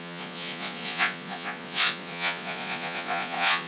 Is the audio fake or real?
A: fake